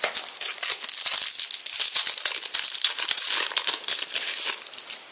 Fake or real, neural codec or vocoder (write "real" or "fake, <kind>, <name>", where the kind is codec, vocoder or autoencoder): real